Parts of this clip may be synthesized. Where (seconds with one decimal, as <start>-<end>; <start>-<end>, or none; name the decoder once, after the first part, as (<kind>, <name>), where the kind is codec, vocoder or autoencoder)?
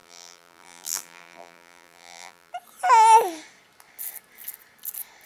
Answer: 0.0-2.5 (vocoder, BigVGAN v2)